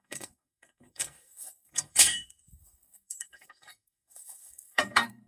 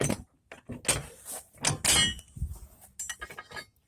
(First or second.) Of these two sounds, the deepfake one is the first